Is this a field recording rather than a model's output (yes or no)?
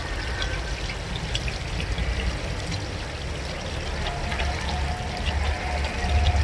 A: yes